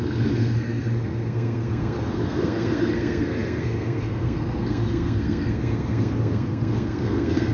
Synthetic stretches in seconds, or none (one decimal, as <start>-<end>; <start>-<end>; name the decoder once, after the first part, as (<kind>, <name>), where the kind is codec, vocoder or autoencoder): 0.0-7.5 (codec, SNAC)